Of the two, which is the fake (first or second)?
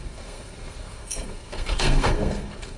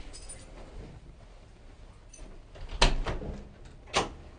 first